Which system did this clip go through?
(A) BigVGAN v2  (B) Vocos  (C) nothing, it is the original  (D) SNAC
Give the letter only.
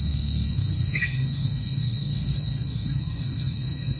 D